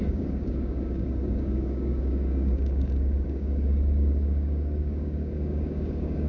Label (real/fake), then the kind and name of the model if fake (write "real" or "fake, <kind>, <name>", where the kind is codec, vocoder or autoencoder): fake, codec, DAC